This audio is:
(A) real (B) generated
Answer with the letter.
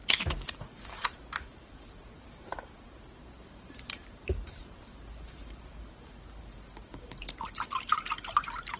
B